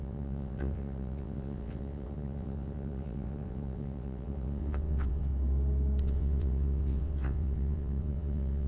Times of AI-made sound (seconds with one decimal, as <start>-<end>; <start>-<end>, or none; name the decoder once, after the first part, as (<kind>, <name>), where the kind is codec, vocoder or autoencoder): 0.0-5.3 (vocoder, WaveNeXt); 6.0-8.7